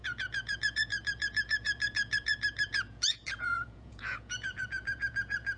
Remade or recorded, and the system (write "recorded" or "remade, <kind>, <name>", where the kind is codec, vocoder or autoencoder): remade, vocoder, Vocos